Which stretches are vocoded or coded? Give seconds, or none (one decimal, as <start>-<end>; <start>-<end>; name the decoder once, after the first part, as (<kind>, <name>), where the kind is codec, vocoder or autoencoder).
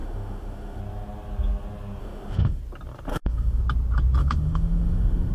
0.0-0.8 (autoencoder, DAC-VAE); 2.0-2.6; 3.1-3.6; 4.2-5.3